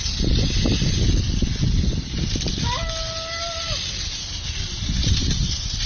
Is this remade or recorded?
recorded